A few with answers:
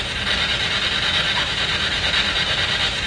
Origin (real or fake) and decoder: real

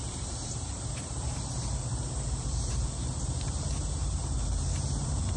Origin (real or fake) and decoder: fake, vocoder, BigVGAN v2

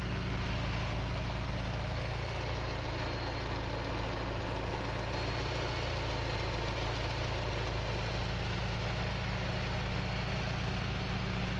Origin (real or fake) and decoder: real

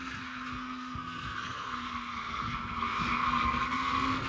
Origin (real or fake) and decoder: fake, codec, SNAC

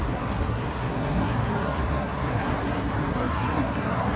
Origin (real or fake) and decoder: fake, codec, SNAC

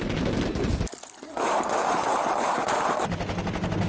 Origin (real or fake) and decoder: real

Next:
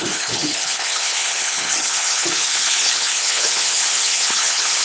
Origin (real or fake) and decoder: fake, codec, HILCodec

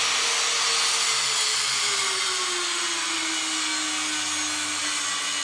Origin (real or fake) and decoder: real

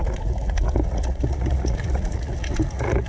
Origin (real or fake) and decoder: fake, vocoder, Vocos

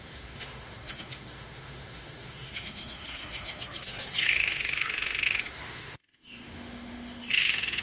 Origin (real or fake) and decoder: fake, autoencoder, DAC-VAE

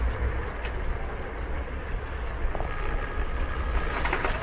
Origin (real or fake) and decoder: real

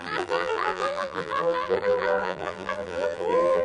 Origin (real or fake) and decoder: fake, vocoder, BigVGAN v2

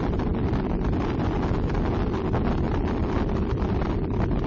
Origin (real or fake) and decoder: real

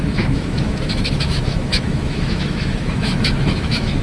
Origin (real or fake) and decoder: fake, autoencoder, DAC-VAE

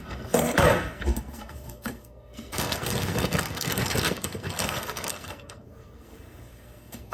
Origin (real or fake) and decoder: fake, codec, SNAC